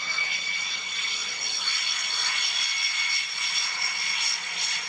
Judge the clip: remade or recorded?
remade